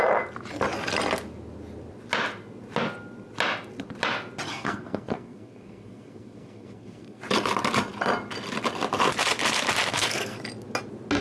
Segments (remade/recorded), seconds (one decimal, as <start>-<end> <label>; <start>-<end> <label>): 0.0-4.5 recorded; 4.5-7.2 remade; 7.2-9.9 recorded; 9.9-10.4 remade; 10.4-11.2 recorded